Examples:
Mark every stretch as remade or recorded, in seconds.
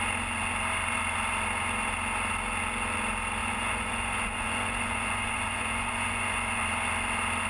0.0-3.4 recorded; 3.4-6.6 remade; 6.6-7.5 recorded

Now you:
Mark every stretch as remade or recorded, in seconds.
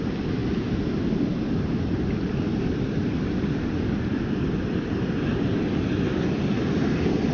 0.0-7.3 recorded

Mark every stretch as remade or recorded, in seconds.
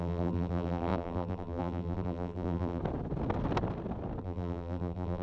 0.0-2.8 remade; 2.8-4.2 recorded; 4.2-5.2 remade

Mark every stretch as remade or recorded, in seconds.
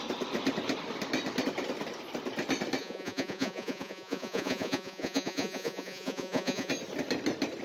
0.0-2.8 recorded; 2.8-6.7 remade; 6.7-7.6 recorded